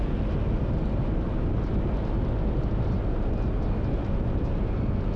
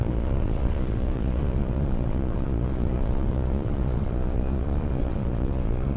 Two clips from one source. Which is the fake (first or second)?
second